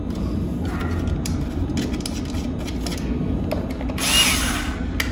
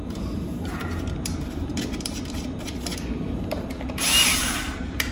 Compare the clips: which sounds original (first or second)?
first